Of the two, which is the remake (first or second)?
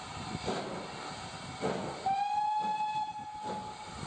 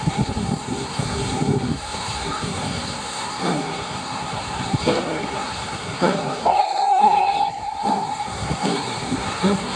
second